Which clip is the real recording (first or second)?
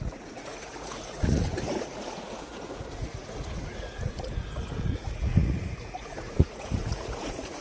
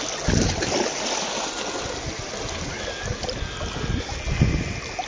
second